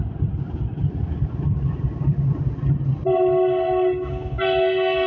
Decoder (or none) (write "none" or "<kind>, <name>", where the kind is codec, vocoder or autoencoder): none